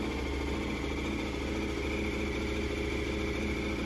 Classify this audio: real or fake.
real